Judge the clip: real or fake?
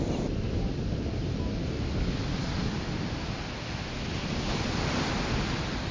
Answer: real